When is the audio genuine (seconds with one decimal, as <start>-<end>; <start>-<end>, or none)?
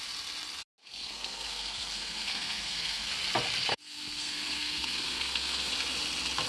0.0-0.8; 3.1-3.7; 5.7-6.5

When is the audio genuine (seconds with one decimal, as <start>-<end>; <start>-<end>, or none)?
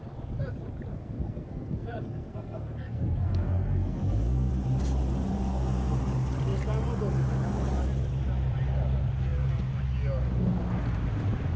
0.0-0.9; 4.5-5.5; 6.0-11.6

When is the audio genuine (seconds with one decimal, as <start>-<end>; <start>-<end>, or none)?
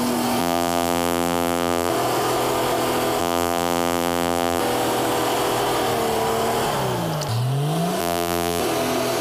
0.0-0.4; 1.9-3.2; 4.6-8.0; 8.6-9.2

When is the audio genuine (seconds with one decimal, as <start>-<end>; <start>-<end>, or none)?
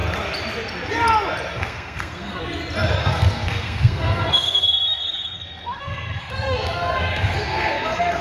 0.0-1.5; 2.4-3.0